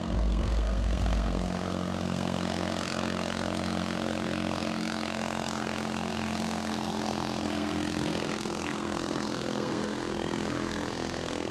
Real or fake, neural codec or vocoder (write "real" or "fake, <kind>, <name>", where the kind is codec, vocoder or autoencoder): fake, codec, SNAC